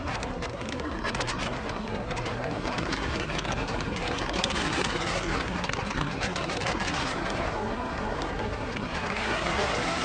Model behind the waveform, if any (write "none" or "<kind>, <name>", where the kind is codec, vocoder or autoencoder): codec, SNAC